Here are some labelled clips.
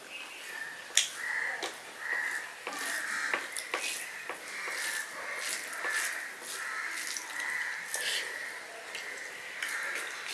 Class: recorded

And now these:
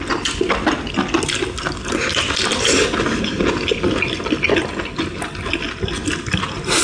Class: recorded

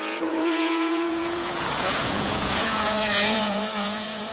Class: remade